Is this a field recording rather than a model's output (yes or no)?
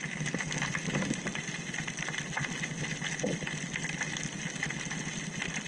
yes